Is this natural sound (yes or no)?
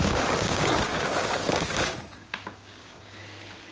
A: no